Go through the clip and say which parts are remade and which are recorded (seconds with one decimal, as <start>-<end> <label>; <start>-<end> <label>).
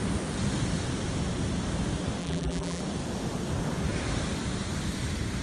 0.0-2.2 recorded; 2.2-2.8 remade; 2.8-5.4 recorded